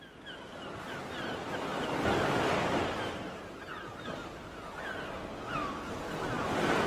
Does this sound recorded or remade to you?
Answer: recorded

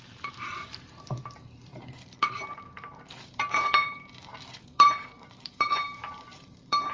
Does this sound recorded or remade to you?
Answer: remade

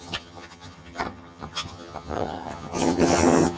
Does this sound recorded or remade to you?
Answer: remade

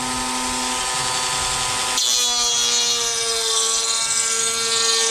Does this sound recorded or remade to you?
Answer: recorded